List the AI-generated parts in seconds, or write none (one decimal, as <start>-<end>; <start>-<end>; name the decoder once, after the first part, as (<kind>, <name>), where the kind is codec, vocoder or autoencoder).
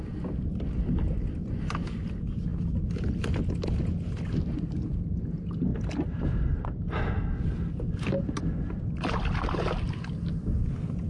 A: none